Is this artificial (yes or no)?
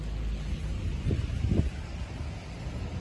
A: no